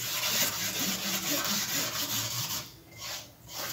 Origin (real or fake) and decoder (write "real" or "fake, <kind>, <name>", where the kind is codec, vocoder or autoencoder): real